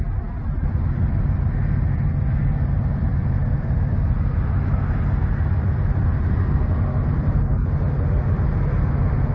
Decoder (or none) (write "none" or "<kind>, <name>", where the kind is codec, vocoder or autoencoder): none